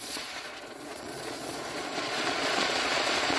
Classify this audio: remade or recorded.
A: remade